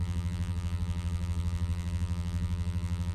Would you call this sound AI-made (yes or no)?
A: yes